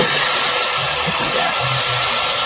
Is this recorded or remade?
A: recorded